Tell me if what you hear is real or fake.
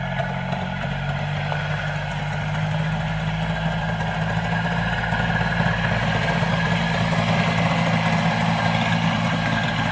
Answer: real